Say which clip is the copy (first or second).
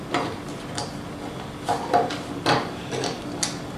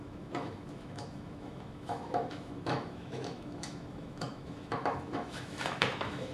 second